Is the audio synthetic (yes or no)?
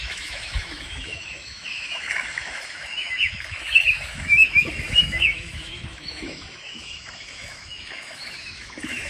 yes